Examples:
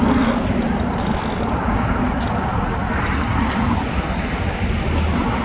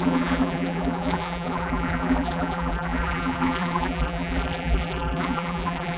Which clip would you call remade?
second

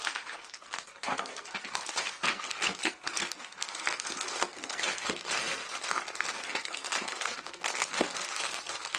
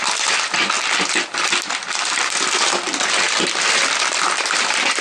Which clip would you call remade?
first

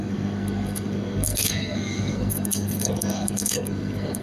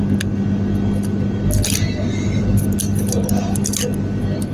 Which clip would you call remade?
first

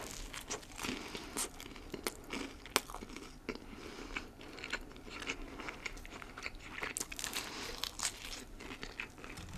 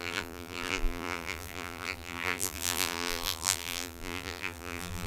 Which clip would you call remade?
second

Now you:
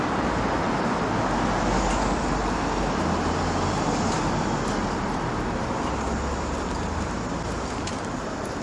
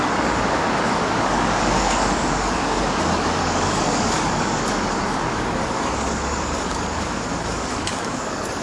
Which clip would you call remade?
second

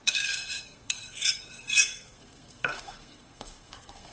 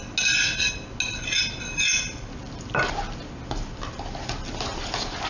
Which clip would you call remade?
first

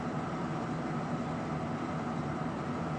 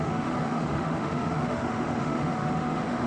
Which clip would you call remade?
second